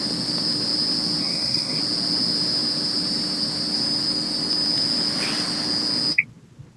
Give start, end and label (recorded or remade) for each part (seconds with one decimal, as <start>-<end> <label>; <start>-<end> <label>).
0.0-1.2 recorded; 1.2-1.8 remade; 1.8-6.8 recorded